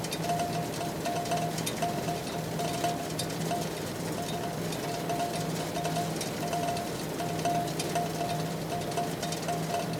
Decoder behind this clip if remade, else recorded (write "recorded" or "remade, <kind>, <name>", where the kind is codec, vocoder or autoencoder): recorded